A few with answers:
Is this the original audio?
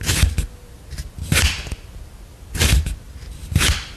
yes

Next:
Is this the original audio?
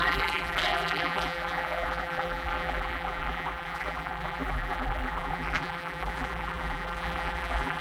no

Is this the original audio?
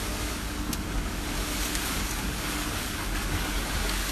no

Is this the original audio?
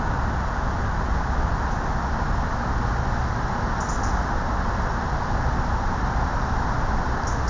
yes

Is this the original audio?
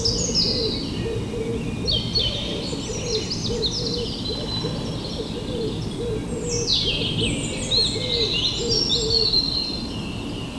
yes